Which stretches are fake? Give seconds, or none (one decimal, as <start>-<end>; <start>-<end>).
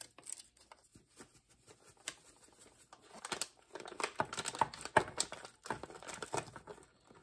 none